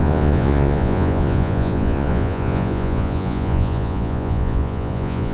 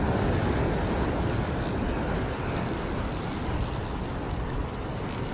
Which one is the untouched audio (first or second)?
second